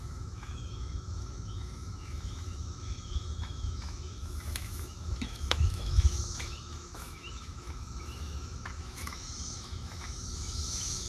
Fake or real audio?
fake